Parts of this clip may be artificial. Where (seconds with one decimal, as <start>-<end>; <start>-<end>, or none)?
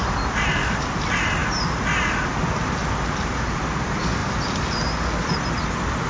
none